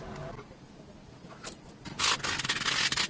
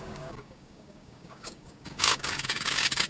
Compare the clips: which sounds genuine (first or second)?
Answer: first